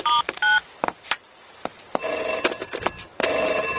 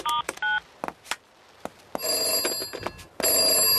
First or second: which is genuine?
second